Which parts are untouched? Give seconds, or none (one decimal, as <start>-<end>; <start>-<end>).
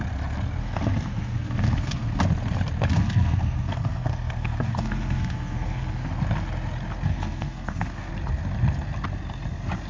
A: 0.0-0.6; 2.2-2.9; 6.1-7.1; 8.1-9.9